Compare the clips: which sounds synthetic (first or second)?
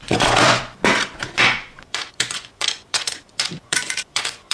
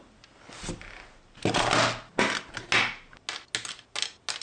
first